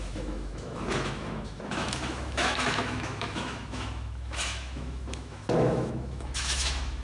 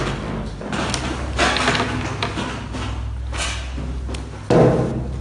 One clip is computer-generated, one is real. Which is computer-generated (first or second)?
first